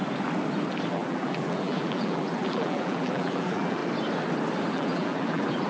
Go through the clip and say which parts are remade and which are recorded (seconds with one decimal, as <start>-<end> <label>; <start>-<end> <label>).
0.0-0.9 recorded; 0.9-3.8 remade; 3.8-4.7 recorded; 4.7-5.7 remade